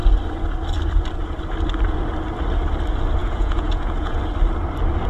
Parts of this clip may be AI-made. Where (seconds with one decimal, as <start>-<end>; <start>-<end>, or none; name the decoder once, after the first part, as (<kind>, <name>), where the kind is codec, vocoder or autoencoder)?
3.2-4.2 (vocoder, Vocos)